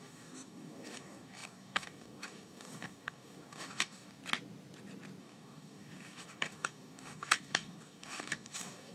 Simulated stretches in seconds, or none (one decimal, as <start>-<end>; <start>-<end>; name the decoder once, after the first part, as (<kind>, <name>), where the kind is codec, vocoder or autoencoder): 0.0-4.2 (codec, DAC); 5.2-8.9